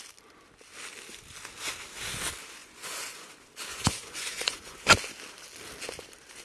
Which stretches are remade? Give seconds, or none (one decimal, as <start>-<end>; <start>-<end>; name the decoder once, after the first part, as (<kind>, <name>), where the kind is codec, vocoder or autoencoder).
2.6-3.3 (vocoder, Vocos); 3.7-4.9

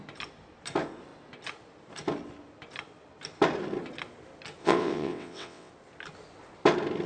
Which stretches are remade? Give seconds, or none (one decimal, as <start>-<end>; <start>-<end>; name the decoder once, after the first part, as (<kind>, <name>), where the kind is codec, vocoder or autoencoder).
4.6-5.7 (vocoder, WaveNeXt)